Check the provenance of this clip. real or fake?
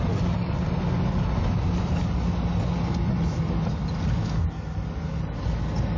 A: real